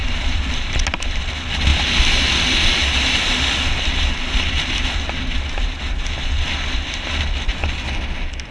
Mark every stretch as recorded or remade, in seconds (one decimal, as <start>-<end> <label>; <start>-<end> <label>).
0.0-0.5 remade; 0.5-8.5 recorded